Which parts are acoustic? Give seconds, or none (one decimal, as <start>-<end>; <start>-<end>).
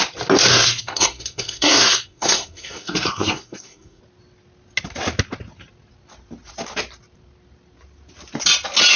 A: 0.0-0.5; 4.0-9.0